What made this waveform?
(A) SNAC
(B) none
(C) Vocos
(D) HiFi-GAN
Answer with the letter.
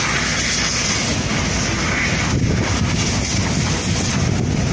B